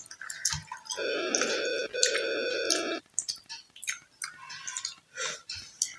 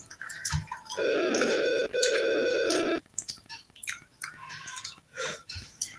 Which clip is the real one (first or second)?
first